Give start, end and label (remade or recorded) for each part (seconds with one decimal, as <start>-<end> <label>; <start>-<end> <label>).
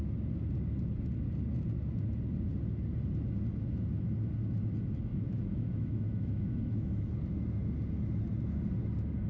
0.0-5.1 recorded; 5.1-7.1 remade; 7.1-9.3 recorded